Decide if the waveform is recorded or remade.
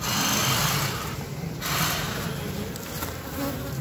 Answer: recorded